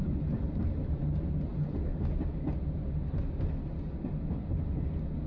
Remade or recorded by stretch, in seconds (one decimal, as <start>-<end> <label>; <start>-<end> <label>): 0.0-5.3 recorded